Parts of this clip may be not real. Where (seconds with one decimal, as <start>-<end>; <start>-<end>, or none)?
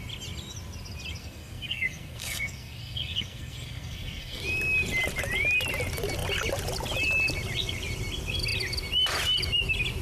1.2-4.4